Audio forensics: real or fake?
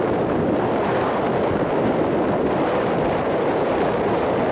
real